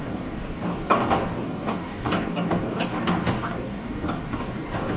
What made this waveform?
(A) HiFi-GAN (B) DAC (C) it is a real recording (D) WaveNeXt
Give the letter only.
B